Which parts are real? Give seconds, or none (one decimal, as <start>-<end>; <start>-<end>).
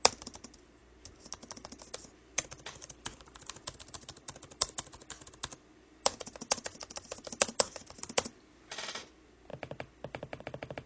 0.0-10.9